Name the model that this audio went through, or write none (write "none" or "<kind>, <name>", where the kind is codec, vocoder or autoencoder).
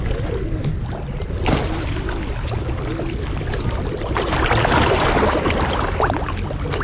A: none